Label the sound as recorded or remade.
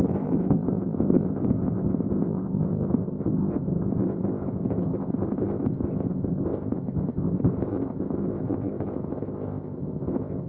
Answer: remade